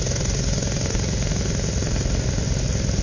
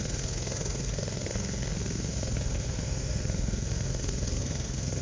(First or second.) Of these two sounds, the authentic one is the first